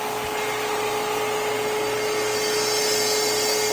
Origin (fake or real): real